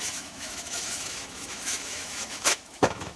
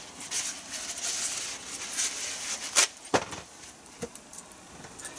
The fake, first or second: first